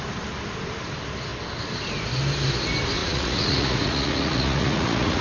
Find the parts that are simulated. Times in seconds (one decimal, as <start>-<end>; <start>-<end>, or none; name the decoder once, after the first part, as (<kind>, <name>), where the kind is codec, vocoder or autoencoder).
3.0-5.2 (vocoder, Vocos)